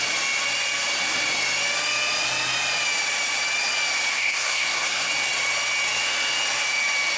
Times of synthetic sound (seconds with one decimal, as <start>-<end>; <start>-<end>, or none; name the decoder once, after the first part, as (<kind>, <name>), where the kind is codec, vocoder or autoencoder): 4.1-5.1 (codec, SNAC)